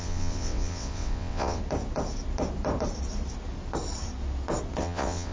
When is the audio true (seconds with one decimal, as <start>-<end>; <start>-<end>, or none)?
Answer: 1.6-4.8